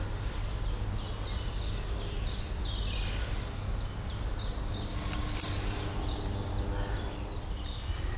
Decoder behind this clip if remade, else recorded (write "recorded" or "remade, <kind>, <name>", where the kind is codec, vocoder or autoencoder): recorded